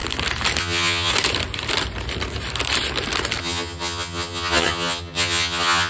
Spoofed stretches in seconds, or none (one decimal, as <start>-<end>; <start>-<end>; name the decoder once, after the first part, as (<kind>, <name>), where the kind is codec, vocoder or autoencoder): 0.6-1.1 (vocoder, HiFi-GAN); 3.4-5.9